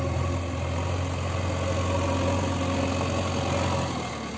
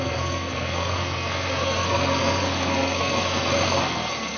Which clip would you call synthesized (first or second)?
second